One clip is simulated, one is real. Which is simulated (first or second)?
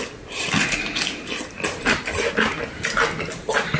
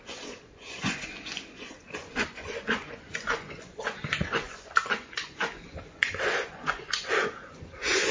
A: second